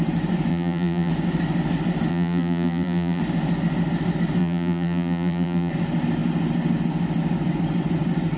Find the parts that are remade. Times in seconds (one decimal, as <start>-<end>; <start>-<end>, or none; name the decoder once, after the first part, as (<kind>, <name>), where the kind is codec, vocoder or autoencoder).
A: 0.5-1.1 (vocoder, BigVGAN v2); 2.1-3.2; 4.4-5.7